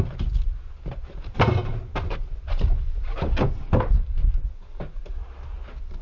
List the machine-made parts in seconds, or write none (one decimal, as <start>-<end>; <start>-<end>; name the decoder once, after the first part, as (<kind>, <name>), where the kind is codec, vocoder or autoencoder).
none